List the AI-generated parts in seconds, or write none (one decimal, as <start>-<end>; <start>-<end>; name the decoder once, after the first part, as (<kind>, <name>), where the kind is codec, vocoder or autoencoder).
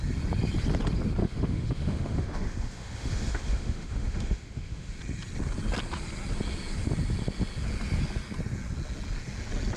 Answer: 1.2-5.0 (autoencoder, DAC-VAE)